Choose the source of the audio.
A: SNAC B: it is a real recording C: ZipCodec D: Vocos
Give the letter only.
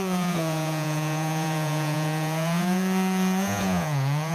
D